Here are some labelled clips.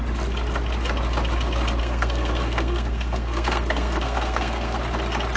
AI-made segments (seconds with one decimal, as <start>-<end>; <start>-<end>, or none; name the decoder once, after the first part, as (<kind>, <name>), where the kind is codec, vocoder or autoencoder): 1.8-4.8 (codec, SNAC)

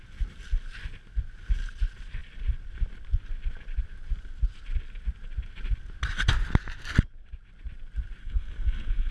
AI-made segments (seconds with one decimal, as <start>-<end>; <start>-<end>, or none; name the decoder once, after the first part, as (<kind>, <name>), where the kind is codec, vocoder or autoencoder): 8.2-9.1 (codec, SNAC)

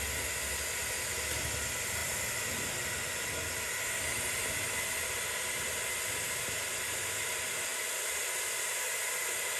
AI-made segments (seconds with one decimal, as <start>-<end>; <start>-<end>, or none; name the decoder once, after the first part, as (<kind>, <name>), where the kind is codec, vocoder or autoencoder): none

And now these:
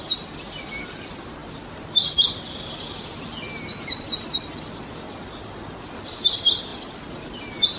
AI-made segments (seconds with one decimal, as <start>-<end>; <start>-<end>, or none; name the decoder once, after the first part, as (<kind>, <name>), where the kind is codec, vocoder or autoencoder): none